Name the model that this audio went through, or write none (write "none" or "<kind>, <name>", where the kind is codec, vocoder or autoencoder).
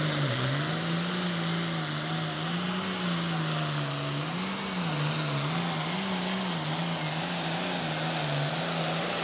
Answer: none